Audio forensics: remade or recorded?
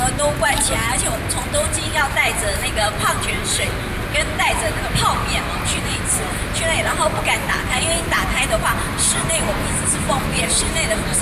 recorded